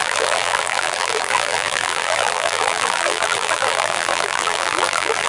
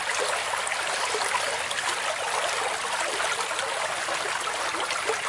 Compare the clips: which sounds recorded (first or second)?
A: second